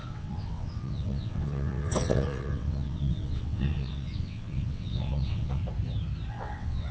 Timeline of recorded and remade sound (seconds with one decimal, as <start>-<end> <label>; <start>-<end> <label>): 0.0-5.6 remade; 5.6-6.3 recorded; 6.3-6.9 remade